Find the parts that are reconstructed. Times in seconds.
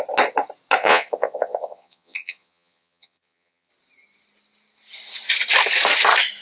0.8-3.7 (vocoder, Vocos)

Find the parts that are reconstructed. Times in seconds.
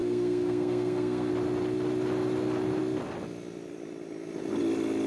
0.0-1.3 (codec, SNAC)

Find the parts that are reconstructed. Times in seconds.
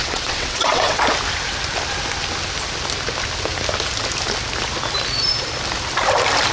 0.0-1.0 (vocoder, WaveNeXt)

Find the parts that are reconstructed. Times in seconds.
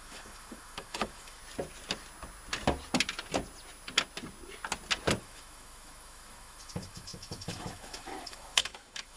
0.0-1.4 (autoencoder, DAC-VAE); 5.2-9.2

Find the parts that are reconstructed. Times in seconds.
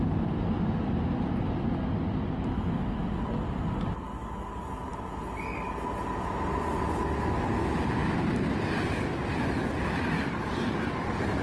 none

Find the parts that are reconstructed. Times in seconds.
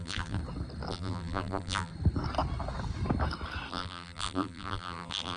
0.0-0.4 (vocoder, BigVGAN v2); 0.9-1.9; 3.7-5.4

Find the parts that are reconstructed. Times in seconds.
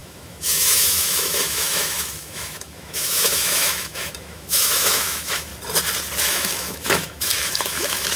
0.0-5.5 (autoencoder, DAC-VAE); 6.2-8.2